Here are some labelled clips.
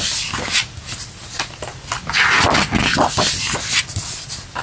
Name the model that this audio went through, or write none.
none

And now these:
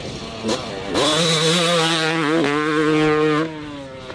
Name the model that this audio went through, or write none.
none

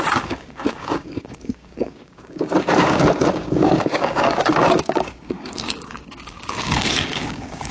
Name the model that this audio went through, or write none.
codec, DAC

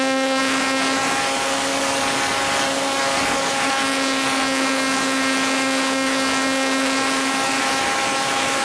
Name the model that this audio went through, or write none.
codec, DAC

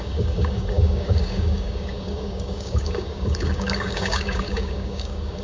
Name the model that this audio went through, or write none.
codec, DAC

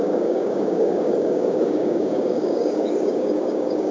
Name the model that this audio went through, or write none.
codec, DAC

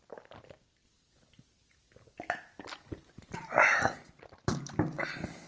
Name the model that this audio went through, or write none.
none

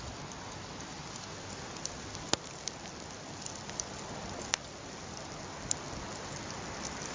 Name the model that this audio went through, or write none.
none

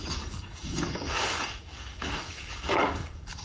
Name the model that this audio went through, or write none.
codec, DAC